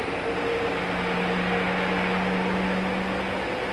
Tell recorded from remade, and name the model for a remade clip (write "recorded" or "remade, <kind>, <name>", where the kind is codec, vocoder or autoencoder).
recorded